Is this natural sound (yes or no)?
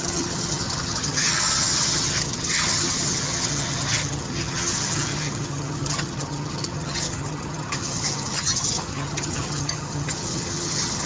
no